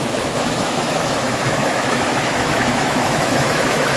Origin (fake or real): fake